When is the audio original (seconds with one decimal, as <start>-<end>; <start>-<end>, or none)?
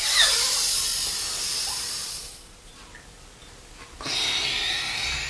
0.0-2.0; 2.8-5.3